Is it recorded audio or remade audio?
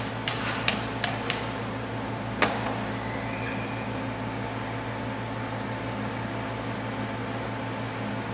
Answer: recorded